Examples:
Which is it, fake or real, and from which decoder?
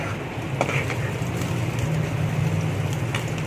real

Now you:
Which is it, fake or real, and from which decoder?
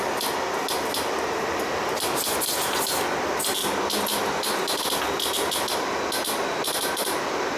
real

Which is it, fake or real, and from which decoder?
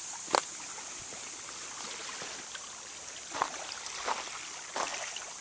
real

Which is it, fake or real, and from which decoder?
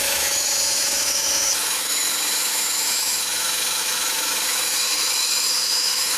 fake, autoencoder, DAC-VAE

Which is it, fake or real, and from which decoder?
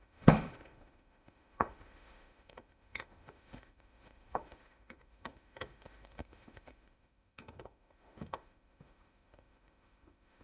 fake, autoencoder, DAC-VAE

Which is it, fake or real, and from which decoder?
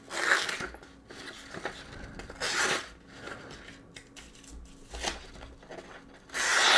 real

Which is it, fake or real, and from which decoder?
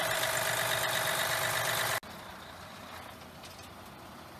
real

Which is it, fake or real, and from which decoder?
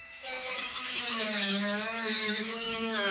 fake, autoencoder, DAC-VAE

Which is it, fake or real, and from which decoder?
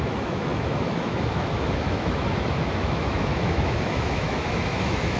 fake, autoencoder, DAC-VAE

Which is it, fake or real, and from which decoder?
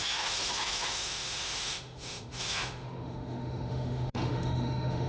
fake, autoencoder, DAC-VAE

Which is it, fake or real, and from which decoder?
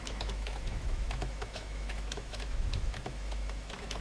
fake, autoencoder, DAC-VAE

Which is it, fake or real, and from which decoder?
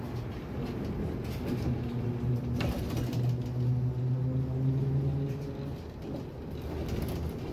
real